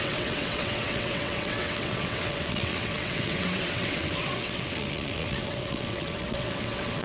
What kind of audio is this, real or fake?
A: fake